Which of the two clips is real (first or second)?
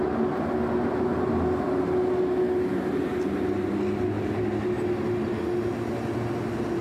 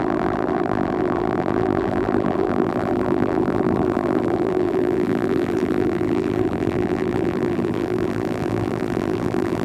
first